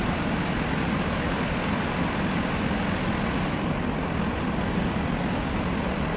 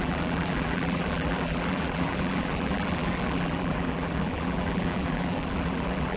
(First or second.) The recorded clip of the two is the first